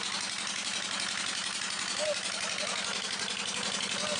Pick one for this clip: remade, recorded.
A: recorded